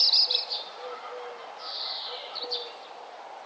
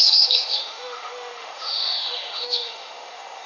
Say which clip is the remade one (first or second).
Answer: second